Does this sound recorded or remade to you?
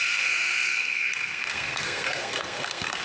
remade